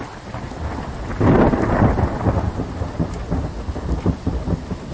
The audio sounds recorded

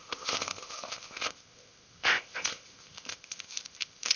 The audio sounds remade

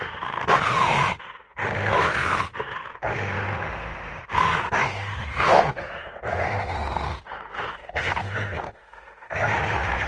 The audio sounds remade